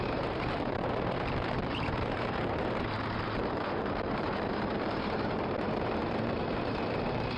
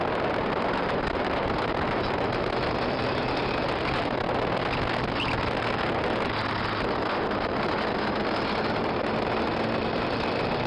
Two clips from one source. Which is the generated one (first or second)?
first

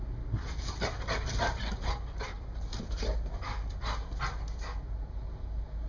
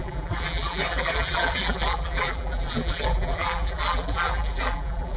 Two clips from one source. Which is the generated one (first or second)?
second